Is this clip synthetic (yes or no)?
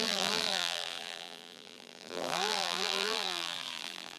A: yes